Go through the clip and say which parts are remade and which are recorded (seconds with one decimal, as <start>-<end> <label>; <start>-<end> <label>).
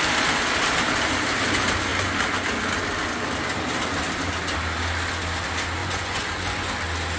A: 0.0-5.8 recorded; 5.8-6.7 remade; 6.7-7.2 recorded